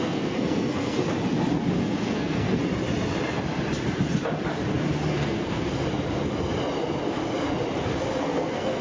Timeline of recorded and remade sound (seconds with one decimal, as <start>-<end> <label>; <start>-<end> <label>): 0.0-1.0 remade; 1.0-1.6 recorded; 1.6-2.6 remade; 2.6-5.1 recorded; 5.1-5.7 remade; 5.7-8.2 recorded; 8.2-8.8 remade